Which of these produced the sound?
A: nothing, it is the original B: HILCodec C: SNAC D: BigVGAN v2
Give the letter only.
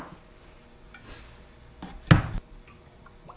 A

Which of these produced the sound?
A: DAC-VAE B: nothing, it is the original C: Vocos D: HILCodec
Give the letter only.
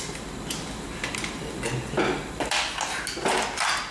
B